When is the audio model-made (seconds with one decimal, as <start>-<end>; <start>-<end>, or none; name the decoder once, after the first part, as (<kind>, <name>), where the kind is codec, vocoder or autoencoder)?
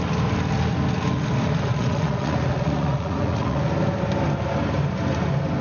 1.7-3.6 (vocoder, Vocos)